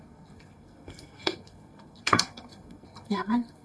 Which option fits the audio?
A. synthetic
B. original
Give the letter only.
A